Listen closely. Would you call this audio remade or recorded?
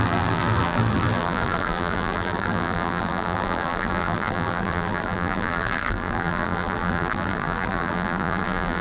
remade